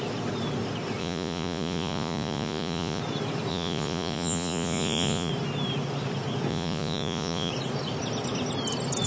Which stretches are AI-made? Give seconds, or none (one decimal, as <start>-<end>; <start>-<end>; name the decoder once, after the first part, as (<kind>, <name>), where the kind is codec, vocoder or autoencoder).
1.0-3.0 (vocoder, Vocos); 3.5-5.3; 6.5-7.5